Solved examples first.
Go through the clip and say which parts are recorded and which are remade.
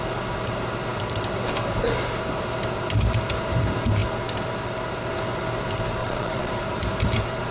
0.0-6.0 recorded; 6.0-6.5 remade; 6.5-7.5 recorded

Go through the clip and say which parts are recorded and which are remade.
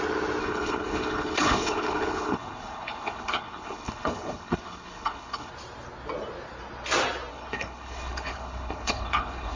0.0-0.4 recorded; 0.4-5.5 remade; 5.5-7.3 recorded; 7.3-9.6 remade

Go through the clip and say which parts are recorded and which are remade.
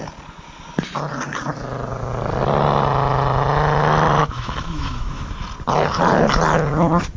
0.0-4.2 recorded; 4.2-5.3 remade; 5.3-7.2 recorded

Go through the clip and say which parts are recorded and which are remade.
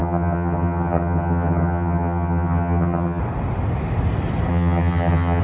0.0-3.2 remade; 3.2-4.5 recorded; 4.5-5.4 remade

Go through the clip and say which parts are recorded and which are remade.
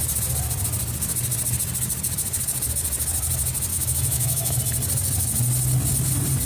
0.0-3.7 recorded; 3.7-4.6 remade; 4.6-6.5 recorded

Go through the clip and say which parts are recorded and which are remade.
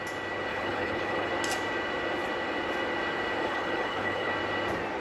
0.0-0.5 recorded; 0.5-1.3 remade; 1.3-3.4 recorded; 3.4-4.3 remade; 4.3-5.0 recorded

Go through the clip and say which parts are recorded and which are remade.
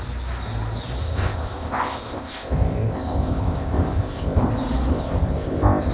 0.0-1.0 recorded; 1.0-4.5 remade; 4.5-4.9 recorded; 4.9-5.9 remade